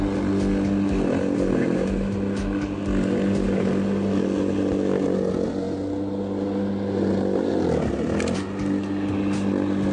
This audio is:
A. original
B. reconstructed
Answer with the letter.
A